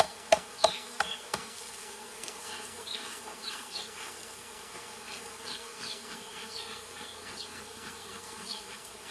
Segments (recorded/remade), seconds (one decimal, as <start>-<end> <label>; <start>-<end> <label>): 0.0-9.1 remade